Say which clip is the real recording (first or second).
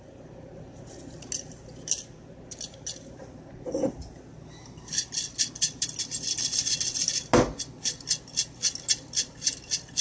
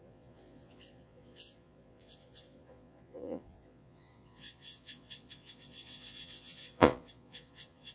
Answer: first